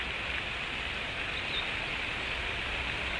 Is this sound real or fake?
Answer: real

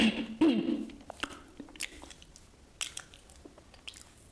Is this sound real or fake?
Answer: real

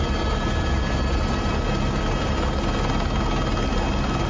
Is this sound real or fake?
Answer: real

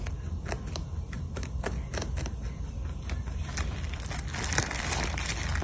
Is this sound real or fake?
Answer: real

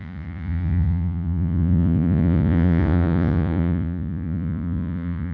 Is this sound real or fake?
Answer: fake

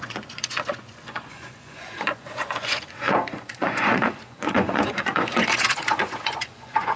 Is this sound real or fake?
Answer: fake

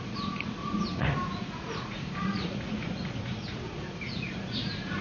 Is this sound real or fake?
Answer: fake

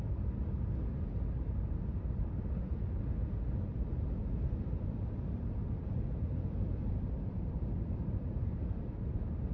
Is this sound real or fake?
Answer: real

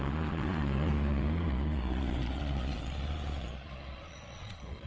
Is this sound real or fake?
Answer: fake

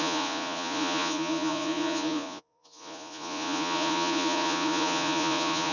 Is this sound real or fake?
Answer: fake